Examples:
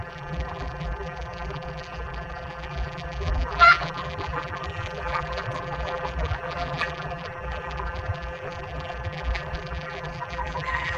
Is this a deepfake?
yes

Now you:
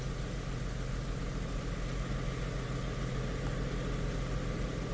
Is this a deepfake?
no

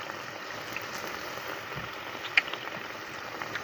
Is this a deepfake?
no